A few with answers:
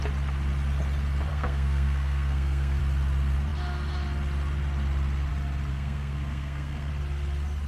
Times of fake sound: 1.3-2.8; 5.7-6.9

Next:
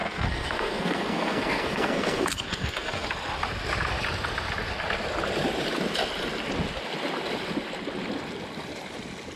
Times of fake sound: 0.0-3.1

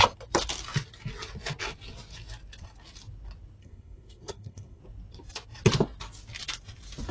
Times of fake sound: 3.6-4.8

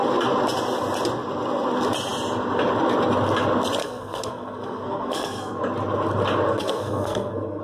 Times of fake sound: 3.8-5.6; 6.5-7.6